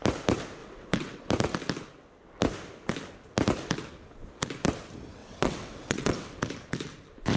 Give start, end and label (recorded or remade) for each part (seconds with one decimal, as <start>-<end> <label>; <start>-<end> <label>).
0.0-0.6 recorded; 0.6-1.3 remade; 1.3-5.2 recorded; 5.2-6.4 remade; 6.4-7.4 recorded